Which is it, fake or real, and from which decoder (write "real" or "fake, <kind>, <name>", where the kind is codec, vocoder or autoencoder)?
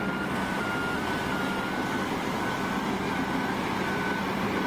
real